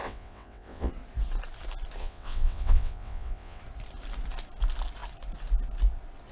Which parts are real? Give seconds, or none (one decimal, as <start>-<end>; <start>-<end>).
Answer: 0.9-2.0; 3.6-6.3